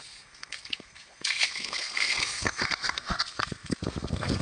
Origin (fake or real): fake